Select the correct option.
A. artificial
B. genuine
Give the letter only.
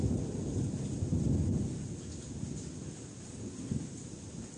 B